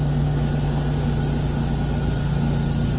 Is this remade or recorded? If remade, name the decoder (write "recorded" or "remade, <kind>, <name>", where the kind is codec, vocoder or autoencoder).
recorded